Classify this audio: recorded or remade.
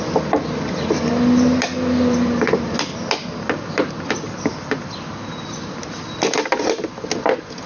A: recorded